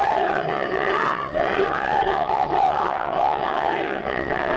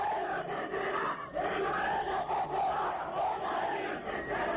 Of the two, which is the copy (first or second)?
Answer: first